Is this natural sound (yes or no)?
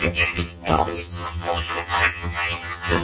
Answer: no